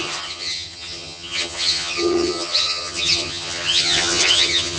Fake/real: fake